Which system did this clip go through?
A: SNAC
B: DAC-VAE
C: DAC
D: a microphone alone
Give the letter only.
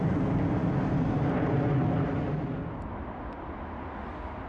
D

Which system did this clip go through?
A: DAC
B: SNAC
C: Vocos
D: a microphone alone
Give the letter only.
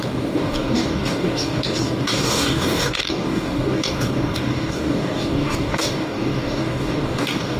A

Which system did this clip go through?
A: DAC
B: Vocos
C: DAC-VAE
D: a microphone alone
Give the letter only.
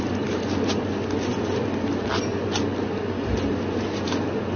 D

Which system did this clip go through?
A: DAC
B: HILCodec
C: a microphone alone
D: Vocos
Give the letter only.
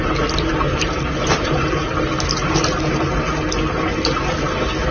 C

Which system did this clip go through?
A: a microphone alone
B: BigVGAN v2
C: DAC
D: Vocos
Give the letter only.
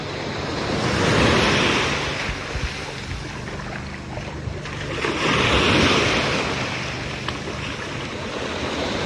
A